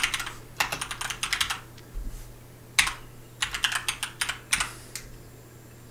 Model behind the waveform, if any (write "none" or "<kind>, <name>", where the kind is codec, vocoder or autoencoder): none